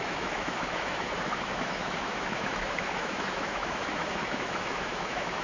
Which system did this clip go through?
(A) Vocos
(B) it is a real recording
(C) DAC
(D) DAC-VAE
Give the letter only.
D